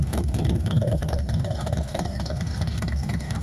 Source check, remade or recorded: remade